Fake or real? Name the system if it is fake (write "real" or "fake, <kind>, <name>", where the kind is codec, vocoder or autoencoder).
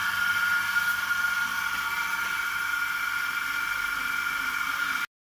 real